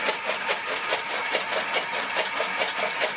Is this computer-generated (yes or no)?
no